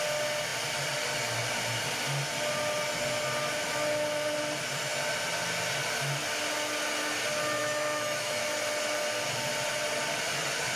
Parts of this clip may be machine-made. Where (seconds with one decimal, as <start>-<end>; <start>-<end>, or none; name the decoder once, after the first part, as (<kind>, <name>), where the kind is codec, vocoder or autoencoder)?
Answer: 7.6-8.4 (autoencoder, DAC-VAE)